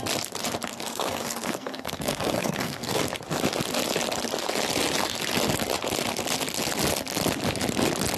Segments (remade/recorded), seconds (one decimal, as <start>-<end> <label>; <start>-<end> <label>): 0.0-0.7 recorded; 0.7-3.0 remade; 3.0-8.2 recorded